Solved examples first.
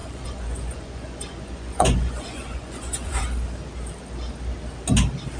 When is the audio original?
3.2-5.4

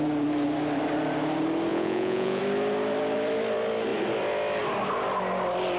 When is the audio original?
0.0-1.7; 2.4-5.8

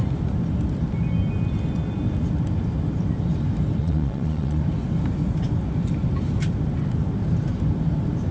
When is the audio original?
0.0-3.8; 4.6-8.3

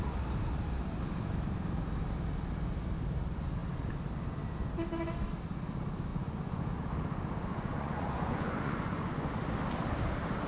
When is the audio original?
0.0-6.1; 6.6-7.5; 9.3-10.5